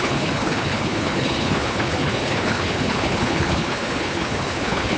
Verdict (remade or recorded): remade